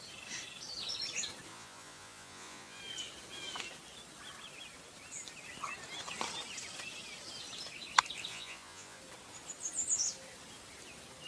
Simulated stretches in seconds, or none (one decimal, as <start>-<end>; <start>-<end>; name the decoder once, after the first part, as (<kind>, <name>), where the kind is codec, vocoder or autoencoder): 1.5-2.8 (vocoder, Vocos); 8.3-9.0